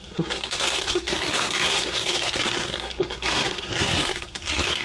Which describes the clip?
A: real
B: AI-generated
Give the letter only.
B